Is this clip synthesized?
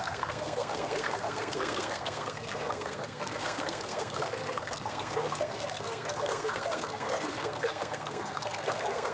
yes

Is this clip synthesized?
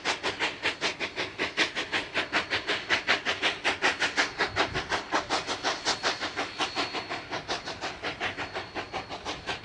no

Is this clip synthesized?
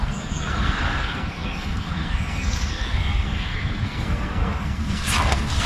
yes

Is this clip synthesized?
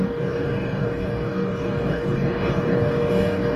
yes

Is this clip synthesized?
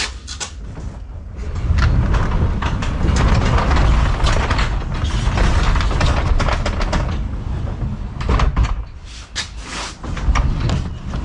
no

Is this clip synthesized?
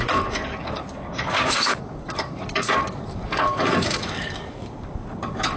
yes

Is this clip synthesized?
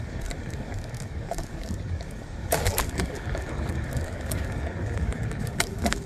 yes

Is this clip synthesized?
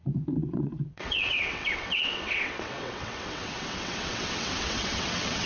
yes